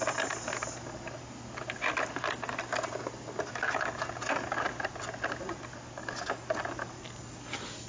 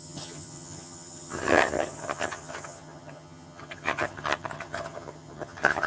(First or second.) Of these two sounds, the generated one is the second